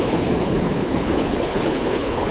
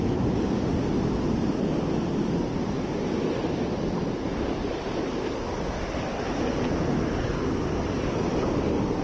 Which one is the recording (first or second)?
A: second